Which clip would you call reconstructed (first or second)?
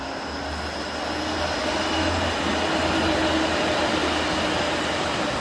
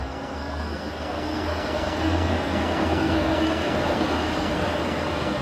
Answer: second